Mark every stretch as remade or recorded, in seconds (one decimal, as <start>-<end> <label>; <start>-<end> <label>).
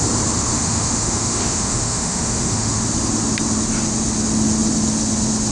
0.0-0.5 recorded; 0.5-2.8 remade; 2.8-5.5 recorded